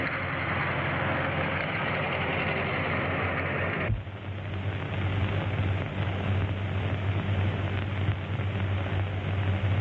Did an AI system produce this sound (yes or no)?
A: no